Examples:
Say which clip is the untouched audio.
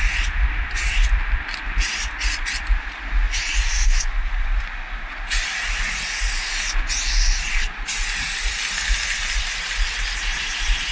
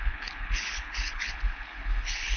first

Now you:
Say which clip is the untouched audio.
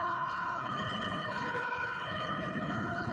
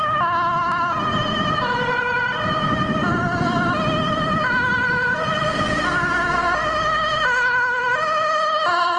second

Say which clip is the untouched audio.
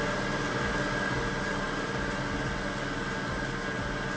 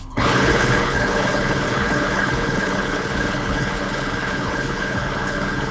first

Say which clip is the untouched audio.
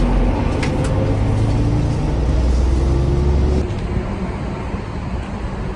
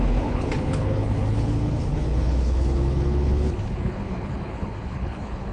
first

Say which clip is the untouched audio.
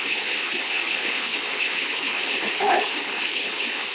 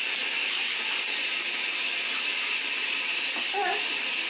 second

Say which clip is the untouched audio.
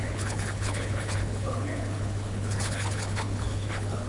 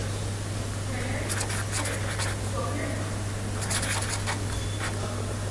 second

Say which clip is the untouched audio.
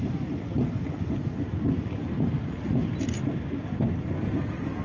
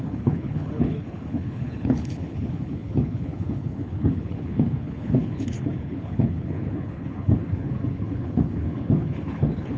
first